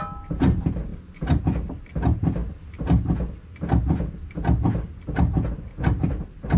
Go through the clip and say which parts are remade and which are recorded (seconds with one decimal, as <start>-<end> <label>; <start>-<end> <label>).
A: 0.0-6.6 recorded